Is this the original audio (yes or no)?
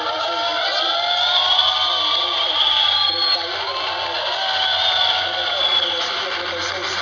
yes